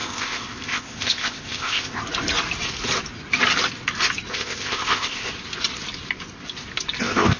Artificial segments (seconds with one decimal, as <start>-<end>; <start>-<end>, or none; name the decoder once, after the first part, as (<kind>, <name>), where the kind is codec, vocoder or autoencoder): 0.0-2.0 (codec, ZipCodec); 4.3-5.3; 7.0-7.4